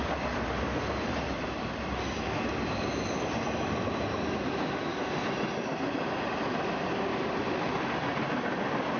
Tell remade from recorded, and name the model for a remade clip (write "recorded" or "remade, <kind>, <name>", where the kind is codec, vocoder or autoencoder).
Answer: recorded